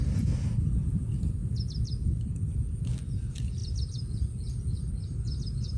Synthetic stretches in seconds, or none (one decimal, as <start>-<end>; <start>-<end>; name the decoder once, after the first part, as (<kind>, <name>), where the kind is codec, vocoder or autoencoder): none